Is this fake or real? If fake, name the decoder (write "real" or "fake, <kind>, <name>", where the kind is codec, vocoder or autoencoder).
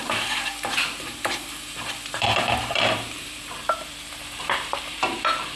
fake, vocoder, BigVGAN v2